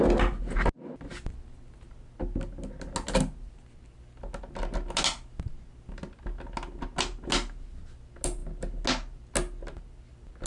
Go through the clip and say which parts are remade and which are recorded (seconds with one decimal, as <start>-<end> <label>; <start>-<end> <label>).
0.0-10.5 recorded

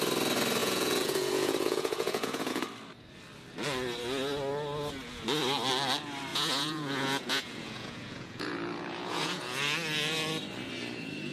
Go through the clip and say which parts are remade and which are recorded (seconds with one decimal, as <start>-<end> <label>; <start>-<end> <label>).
0.0-0.6 recorded; 0.6-2.6 remade; 2.6-6.3 recorded; 6.3-9.4 remade; 9.4-11.3 recorded

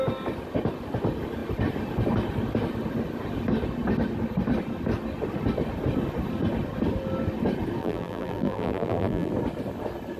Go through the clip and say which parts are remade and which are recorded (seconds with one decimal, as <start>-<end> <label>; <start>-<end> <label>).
0.0-7.8 recorded; 7.8-9.3 remade; 9.3-10.2 recorded

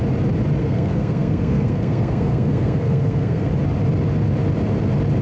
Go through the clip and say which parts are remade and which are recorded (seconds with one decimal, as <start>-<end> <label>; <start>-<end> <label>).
0.0-0.6 recorded; 0.6-3.5 remade; 3.5-5.2 recorded

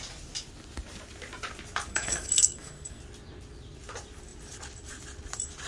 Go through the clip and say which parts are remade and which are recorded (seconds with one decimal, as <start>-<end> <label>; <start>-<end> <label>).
0.0-1.9 recorded; 1.9-3.0 remade; 3.0-5.7 recorded

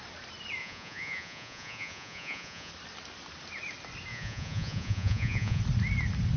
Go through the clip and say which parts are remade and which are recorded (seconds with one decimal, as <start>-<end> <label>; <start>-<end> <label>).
0.0-0.6 recorded; 0.6-2.7 remade; 2.7-4.1 recorded; 4.1-5.6 remade; 5.6-6.4 recorded

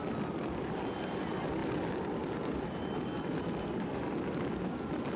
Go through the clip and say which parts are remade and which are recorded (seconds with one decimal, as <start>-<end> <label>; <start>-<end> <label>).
0.0-5.2 recorded